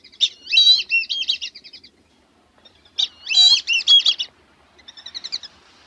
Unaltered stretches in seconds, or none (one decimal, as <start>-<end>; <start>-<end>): 0.0-5.9